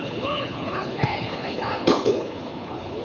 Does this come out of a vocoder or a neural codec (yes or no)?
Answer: yes